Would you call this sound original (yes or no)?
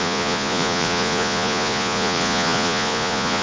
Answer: no